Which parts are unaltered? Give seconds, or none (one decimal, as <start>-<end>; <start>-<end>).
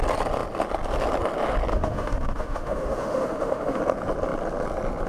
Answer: 0.0-1.7; 3.8-5.1